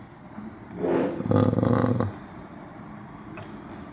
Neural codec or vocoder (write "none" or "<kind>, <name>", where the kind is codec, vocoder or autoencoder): none